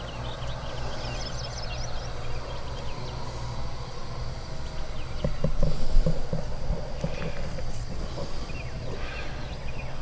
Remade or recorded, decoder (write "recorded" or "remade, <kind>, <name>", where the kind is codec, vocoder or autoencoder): recorded